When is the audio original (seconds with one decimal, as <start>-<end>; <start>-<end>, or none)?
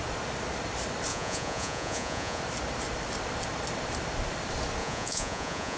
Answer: 0.0-1.1; 2.4-4.8